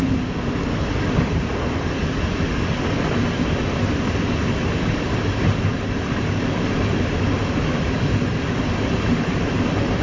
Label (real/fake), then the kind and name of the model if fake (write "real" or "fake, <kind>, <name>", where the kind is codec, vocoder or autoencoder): real